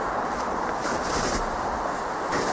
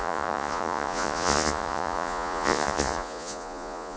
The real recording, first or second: first